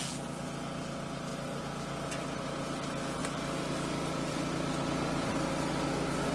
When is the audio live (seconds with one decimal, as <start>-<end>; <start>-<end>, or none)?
0.0-3.2; 5.5-6.3